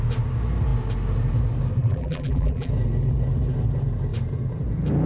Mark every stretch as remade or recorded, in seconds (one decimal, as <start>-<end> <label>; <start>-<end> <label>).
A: 0.0-1.8 recorded; 1.8-2.7 remade; 2.7-5.1 recorded